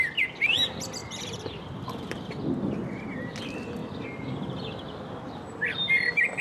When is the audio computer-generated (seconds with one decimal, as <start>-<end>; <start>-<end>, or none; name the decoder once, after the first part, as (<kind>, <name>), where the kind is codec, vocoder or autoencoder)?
1.0-2.4 (vocoder, BigVGAN v2)